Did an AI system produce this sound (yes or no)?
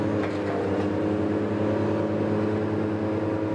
no